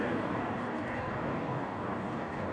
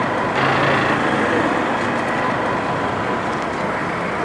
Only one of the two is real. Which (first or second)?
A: second